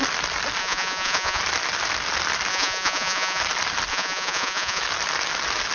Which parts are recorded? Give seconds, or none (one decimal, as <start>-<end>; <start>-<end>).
0.0-0.6; 1.4-2.5; 3.4-3.9; 4.8-5.7